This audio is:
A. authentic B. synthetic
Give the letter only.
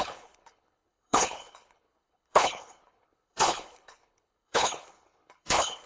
B